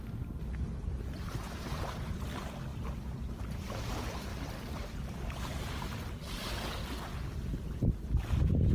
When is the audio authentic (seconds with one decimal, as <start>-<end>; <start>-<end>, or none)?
0.0-8.7